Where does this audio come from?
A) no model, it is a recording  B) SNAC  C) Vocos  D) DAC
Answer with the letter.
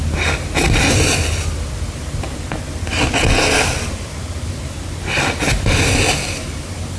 A